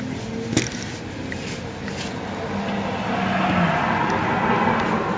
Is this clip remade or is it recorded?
recorded